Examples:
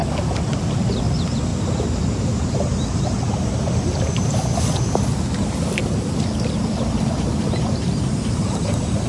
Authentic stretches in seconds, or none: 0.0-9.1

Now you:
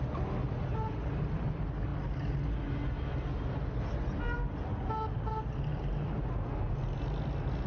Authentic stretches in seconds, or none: 0.0-7.7

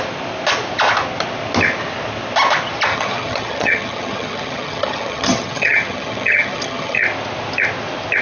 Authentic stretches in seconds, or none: 0.0-2.9; 7.0-8.2

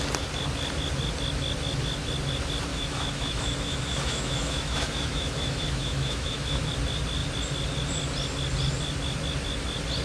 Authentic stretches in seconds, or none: 0.0-2.7; 6.7-10.0

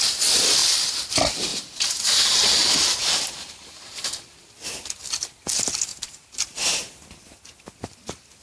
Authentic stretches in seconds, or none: 0.0-1.5; 2.0-5.9; 6.9-8.4

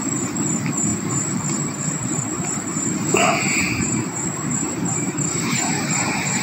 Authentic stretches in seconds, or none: 0.0-0.9; 4.5-6.4

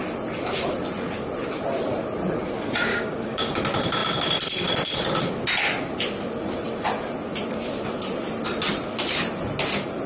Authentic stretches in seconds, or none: 0.0-2.9; 3.5-10.1